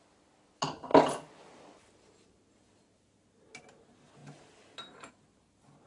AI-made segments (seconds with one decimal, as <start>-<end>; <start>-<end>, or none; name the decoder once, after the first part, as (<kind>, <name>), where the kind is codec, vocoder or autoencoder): none